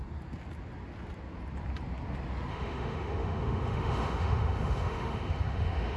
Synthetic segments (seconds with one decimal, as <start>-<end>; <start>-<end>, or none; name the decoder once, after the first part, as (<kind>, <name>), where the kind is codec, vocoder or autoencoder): 2.5-6.0 (autoencoder, DAC-VAE)